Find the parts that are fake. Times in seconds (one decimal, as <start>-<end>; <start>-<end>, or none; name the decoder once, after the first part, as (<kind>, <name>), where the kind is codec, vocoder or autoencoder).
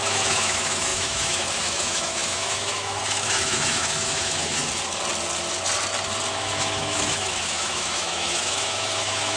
0.0-4.6 (autoencoder, DAC-VAE); 6.3-9.4